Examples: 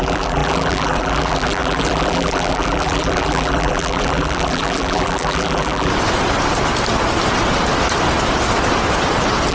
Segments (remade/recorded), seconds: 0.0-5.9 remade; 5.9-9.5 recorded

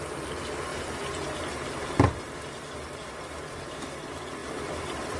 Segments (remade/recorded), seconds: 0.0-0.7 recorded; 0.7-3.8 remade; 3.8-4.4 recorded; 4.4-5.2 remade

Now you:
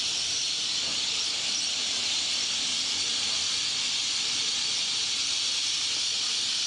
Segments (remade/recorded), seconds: 0.0-0.9 recorded; 0.9-2.0 remade; 2.0-6.7 recorded

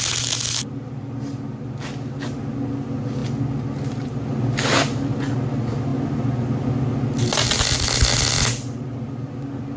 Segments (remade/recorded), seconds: 0.0-9.8 recorded

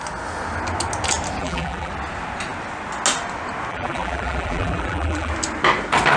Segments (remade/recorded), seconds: 0.0-1.4 recorded; 1.4-1.9 remade; 1.9-3.7 recorded; 3.7-5.3 remade; 5.3-6.2 recorded

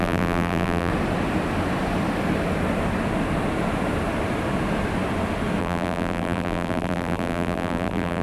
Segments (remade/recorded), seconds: 0.0-0.9 remade; 0.9-5.6 recorded; 5.6-8.2 remade

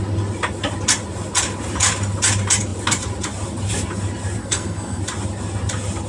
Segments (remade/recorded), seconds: 0.0-4.4 recorded; 4.4-5.0 remade; 5.0-6.1 recorded